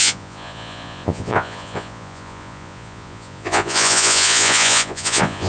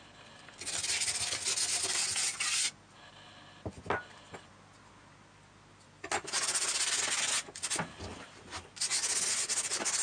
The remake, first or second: first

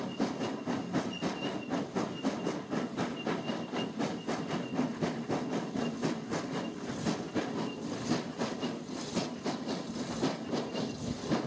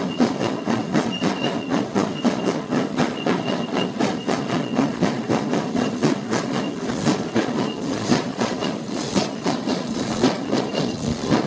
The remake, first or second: second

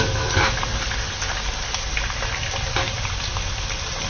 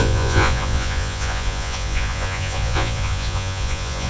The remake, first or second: second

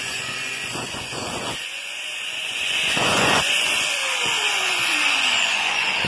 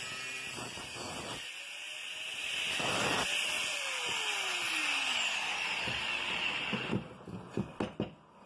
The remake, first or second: first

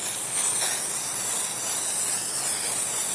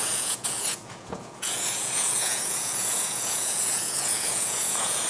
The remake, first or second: second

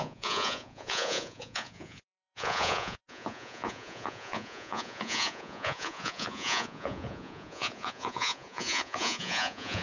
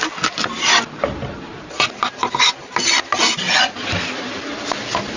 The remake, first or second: first